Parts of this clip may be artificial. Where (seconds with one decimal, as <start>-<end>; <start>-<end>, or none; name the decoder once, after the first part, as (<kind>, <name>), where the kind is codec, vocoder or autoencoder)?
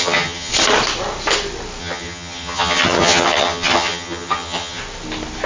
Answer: 0.0-0.5 (vocoder, HiFi-GAN); 1.8-4.8